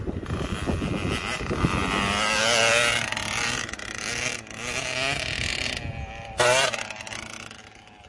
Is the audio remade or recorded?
recorded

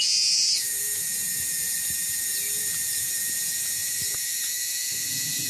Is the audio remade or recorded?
remade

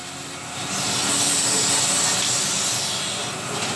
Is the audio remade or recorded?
recorded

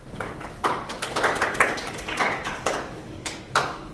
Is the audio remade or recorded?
remade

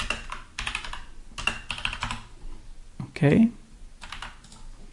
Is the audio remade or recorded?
recorded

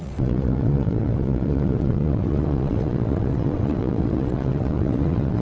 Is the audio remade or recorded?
remade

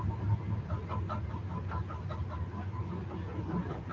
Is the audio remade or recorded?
recorded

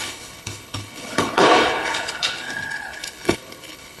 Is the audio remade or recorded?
remade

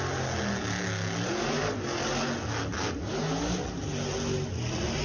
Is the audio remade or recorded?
recorded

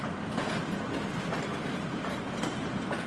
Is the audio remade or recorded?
recorded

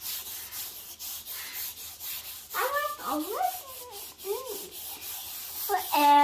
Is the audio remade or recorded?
recorded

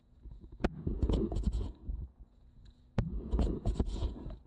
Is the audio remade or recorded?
remade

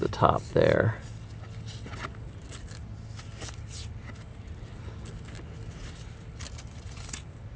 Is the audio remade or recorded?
recorded